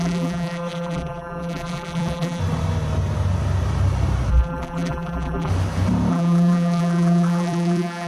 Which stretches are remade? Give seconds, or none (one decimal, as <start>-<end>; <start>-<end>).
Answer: 0.0-2.4; 4.3-5.5; 6.1-8.1